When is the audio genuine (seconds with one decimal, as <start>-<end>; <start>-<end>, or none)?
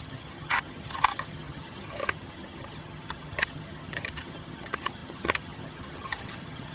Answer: none